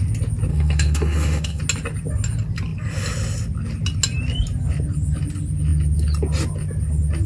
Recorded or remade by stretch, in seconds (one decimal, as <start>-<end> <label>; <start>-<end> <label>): 0.0-0.5 recorded; 0.5-1.6 remade; 1.6-7.3 recorded